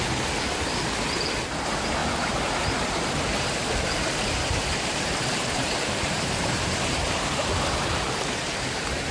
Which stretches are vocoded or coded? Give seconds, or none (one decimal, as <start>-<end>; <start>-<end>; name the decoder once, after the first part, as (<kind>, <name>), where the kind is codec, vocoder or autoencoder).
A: 4.4-8.2 (vocoder, BigVGAN v2)